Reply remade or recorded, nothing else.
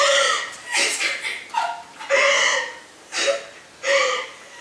recorded